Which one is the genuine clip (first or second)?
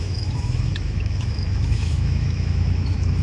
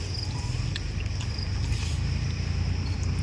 second